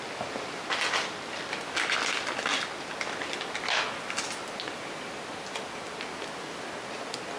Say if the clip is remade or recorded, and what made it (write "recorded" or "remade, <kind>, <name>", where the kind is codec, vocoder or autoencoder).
recorded